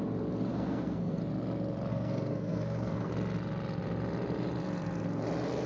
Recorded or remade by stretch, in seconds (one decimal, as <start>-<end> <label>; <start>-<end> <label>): 0.0-0.5 recorded; 0.5-1.2 remade; 1.2-1.9 recorded; 1.9-3.1 remade; 3.1-5.7 recorded